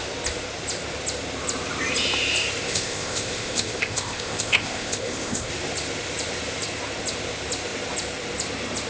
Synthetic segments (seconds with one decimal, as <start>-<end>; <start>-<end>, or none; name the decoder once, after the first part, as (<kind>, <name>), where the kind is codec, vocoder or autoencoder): 2.6-5.5 (codec, ZipCodec)